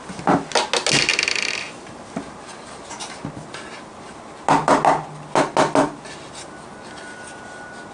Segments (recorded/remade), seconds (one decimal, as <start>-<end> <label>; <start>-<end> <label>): 0.0-1.1 recorded; 1.1-2.0 remade; 2.0-7.9 recorded